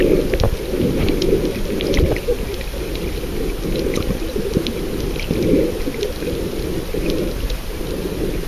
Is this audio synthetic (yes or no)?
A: no